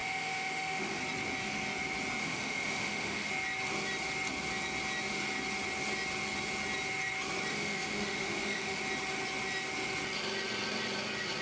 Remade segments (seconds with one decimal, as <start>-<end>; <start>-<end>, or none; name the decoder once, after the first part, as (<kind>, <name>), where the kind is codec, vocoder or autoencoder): 0.0-1.0 (autoencoder, DAC-VAE); 2.2-3.3; 7.5-8.8